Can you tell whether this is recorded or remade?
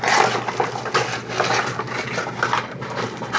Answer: recorded